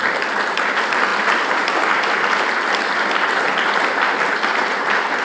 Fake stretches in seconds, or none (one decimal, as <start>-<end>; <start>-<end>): none